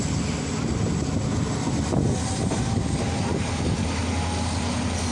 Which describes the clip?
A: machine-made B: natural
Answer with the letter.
B